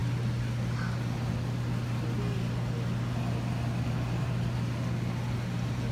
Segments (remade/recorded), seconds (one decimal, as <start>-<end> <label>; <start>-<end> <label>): 0.0-5.9 recorded